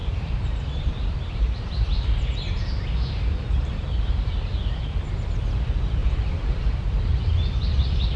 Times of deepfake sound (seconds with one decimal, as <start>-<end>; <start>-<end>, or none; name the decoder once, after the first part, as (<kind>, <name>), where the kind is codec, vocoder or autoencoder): 0.0-4.9 (vocoder, BigVGAN v2); 6.0-6.7